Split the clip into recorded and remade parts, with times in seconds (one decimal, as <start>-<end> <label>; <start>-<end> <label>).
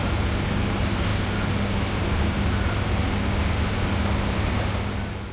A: 0.0-5.3 recorded